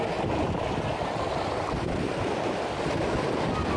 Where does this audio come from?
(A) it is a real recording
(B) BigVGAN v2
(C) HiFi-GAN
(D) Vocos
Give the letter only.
A